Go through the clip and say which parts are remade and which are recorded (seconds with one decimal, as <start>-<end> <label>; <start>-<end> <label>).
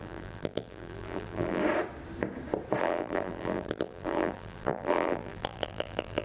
0.0-1.6 remade; 1.6-2.8 recorded; 2.8-6.2 remade